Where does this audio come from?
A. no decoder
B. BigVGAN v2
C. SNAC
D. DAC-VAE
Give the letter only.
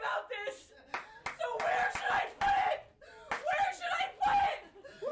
A